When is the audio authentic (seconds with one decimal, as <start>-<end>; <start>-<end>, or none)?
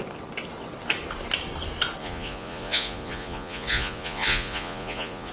0.0-2.0